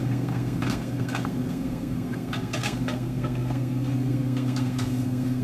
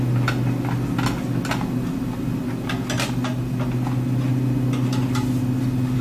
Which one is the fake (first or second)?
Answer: first